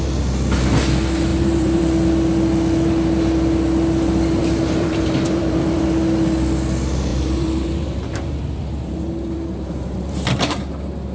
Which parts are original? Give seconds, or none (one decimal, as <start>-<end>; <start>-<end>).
0.0-1.3; 1.8-4.4; 5.8-7.1; 10.7-11.1